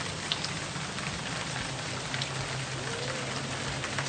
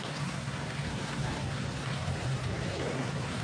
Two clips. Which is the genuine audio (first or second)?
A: first